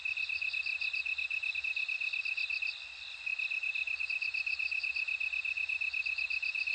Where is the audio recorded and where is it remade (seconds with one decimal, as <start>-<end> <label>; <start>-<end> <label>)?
0.0-0.7 recorded; 0.7-1.6 remade; 1.6-3.3 recorded; 3.3-4.0 remade; 4.0-6.7 recorded